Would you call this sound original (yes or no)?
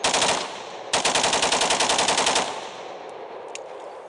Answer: yes